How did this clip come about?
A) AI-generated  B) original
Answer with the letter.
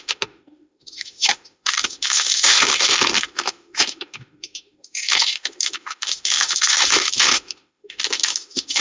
A